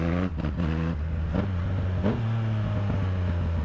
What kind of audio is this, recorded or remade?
recorded